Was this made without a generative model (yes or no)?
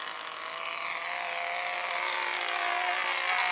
yes